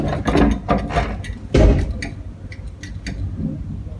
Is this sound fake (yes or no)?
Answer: no